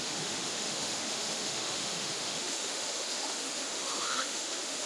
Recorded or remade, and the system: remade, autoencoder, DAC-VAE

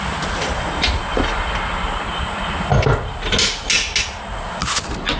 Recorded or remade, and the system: recorded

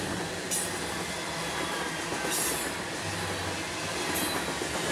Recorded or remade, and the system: recorded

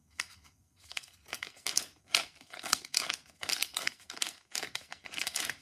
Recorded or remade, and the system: remade, codec, SNAC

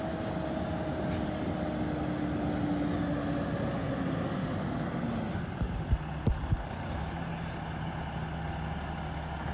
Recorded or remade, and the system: recorded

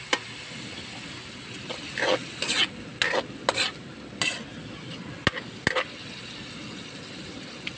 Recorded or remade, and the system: recorded